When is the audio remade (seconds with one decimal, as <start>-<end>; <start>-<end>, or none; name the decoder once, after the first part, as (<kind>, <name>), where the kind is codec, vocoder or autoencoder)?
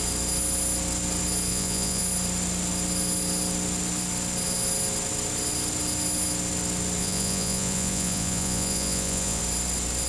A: 1.5-2.0 (vocoder, Vocos); 7.0-9.4